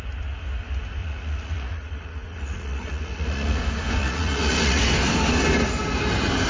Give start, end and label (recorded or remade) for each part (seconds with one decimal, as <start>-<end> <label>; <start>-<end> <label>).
0.0-1.0 recorded; 1.0-3.6 remade; 3.6-4.0 recorded; 4.0-4.8 remade; 4.8-6.5 recorded